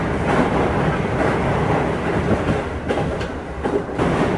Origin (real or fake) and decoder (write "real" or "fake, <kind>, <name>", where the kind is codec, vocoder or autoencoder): real